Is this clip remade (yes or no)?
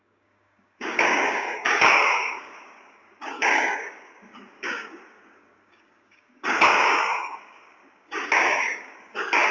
yes